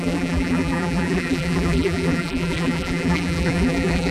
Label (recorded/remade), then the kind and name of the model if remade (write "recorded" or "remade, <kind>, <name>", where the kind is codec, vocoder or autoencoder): remade, vocoder, BigVGAN v2